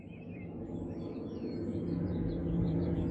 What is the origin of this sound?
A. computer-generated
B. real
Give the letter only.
A